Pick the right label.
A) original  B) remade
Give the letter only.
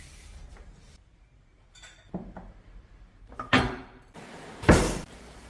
B